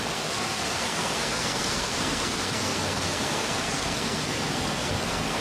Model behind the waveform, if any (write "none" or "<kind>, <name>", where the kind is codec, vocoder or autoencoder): codec, SNAC